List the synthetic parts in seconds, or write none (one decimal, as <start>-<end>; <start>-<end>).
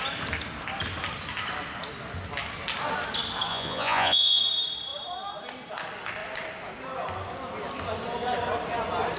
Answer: 3.5-4.4